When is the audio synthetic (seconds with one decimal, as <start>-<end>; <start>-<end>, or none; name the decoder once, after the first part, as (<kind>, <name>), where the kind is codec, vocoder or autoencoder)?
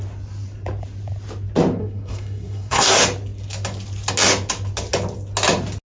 1.8-2.9 (codec, SNAC)